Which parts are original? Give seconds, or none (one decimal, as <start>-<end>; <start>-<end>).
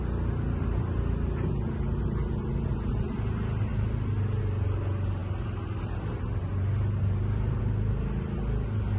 0.0-9.0